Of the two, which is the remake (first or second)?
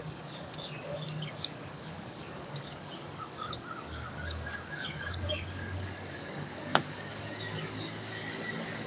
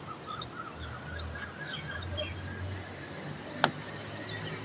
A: first